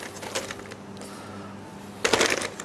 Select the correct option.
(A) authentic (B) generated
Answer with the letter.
A